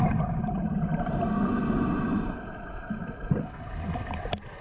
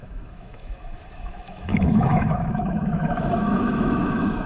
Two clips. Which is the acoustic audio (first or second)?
first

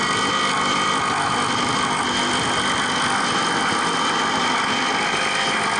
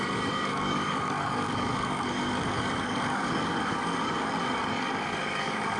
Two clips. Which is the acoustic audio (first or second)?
first